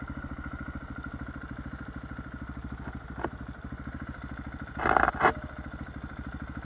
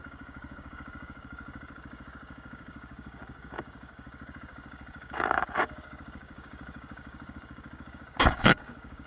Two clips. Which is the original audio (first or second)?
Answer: first